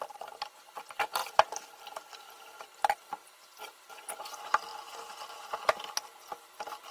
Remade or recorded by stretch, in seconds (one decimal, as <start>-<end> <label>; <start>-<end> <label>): 0.0-6.9 recorded